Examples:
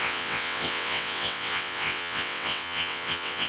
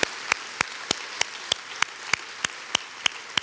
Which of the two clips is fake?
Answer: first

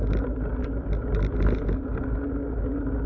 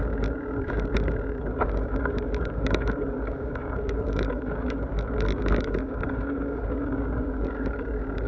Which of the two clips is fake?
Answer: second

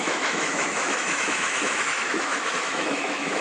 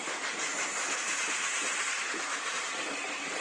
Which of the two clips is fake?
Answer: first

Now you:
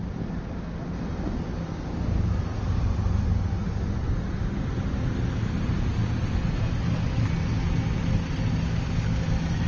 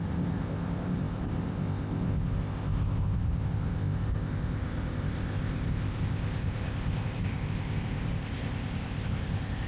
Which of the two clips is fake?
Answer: second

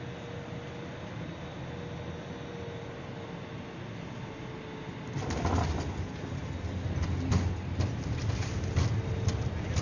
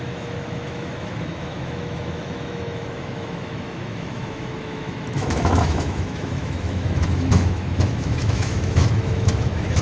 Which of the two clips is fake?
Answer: second